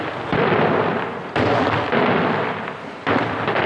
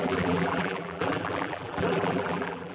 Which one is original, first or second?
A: first